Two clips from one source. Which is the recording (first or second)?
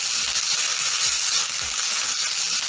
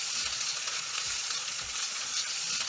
first